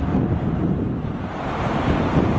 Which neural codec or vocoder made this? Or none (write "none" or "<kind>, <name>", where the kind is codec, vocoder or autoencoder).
none